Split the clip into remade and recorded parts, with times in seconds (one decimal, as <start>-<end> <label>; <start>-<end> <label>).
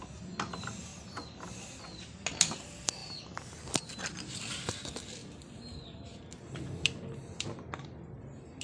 0.0-8.6 recorded